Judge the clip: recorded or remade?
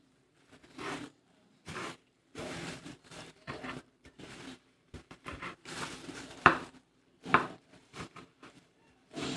remade